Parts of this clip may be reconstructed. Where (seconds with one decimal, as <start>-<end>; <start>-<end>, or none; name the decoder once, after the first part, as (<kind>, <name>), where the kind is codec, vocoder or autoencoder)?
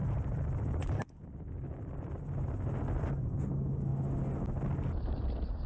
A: 0.0-3.4 (vocoder, BigVGAN v2)